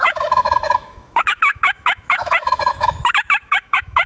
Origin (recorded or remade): remade